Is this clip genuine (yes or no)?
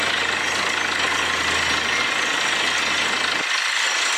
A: yes